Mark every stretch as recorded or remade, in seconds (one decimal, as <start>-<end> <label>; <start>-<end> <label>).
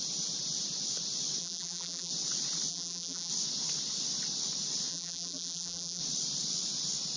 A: 0.0-1.4 recorded; 1.4-2.1 remade; 2.1-2.7 recorded; 2.7-3.3 remade; 3.3-4.9 recorded; 4.9-6.0 remade; 6.0-7.2 recorded